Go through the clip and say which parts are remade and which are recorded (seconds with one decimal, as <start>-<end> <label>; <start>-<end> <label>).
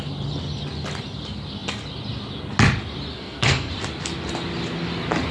0.0-3.1 recorded; 3.1-3.7 remade; 3.7-5.3 recorded